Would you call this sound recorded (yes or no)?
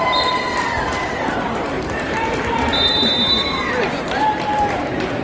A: no